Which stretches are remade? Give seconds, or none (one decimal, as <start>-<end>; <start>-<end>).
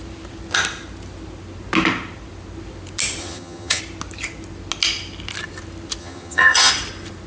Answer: 3.2-3.8; 6.0-6.7